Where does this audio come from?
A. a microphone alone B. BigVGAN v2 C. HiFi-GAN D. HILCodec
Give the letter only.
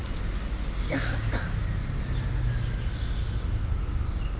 A